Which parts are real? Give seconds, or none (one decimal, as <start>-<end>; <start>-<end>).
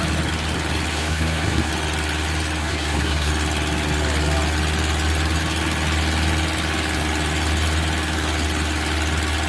0.0-0.9; 1.7-2.6; 3.3-9.5